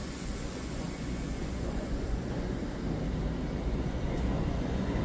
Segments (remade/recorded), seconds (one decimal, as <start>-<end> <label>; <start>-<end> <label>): 0.0-2.6 remade; 2.6-3.7 recorded; 3.7-5.0 remade